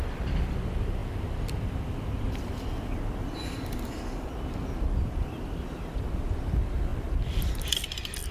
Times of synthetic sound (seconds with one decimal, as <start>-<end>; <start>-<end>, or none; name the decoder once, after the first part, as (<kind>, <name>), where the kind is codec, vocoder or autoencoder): 6.9-8.3 (vocoder, BigVGAN v2)